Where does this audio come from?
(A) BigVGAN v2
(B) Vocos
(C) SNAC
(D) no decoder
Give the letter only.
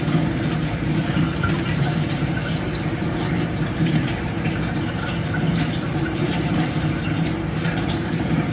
A